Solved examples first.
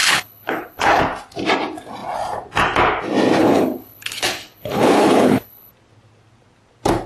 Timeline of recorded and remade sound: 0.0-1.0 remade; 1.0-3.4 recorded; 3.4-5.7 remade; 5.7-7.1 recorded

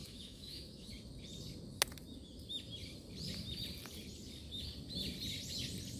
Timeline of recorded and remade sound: 0.0-0.9 remade; 0.9-6.0 recorded

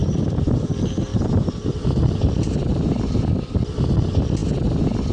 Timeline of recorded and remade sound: 0.0-0.7 remade; 0.7-1.1 recorded; 1.1-3.2 remade; 3.2-5.1 recorded

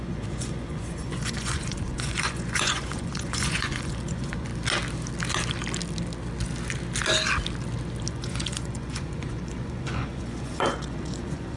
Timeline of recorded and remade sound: 0.0-4.5 remade; 4.5-8.1 recorded; 8.1-11.6 remade